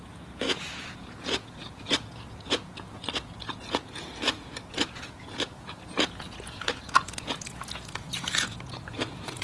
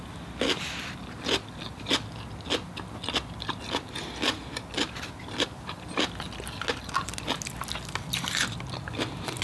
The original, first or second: second